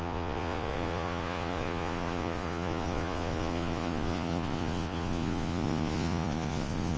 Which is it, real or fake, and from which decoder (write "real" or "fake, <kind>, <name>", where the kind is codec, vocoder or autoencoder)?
fake, vocoder, Vocos